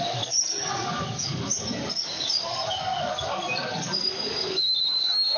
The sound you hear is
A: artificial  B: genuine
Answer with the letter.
A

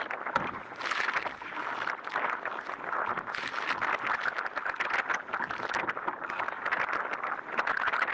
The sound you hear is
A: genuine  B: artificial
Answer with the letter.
A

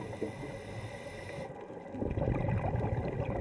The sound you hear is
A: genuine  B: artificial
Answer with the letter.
A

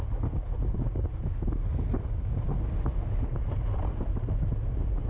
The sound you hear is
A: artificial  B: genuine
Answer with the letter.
B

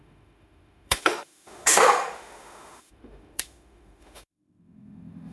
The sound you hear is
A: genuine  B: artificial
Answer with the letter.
B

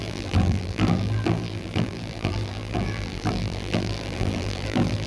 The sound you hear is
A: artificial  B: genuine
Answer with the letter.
A